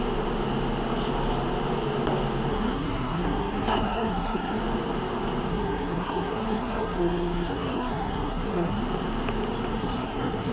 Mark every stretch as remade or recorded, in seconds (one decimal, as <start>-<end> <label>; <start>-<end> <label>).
0.0-2.5 recorded; 2.5-4.6 remade; 4.6-5.5 recorded; 5.5-8.8 remade; 8.8-9.7 recorded; 9.7-10.5 remade